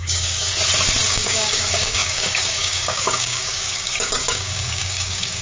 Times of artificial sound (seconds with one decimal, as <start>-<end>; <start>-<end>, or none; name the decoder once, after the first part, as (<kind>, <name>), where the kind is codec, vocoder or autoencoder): 0.0-0.5 (codec, DAC); 1.1-5.4